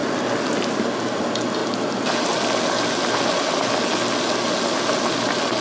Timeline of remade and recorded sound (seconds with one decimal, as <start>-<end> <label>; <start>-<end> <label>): 0.0-5.6 recorded